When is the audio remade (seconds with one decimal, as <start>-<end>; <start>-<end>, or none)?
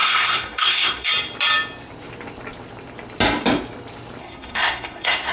0.0-1.1; 4.2-5.3